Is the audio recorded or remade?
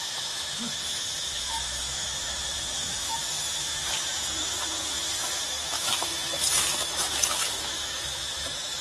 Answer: remade